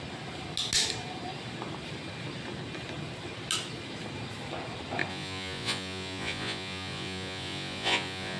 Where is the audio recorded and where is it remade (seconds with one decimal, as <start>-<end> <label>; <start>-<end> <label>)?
0.0-5.1 recorded; 5.1-8.4 remade